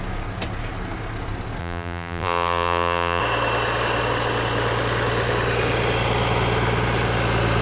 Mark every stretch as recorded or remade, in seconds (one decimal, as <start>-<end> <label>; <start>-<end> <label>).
0.0-1.6 recorded; 1.6-3.2 remade; 3.2-7.6 recorded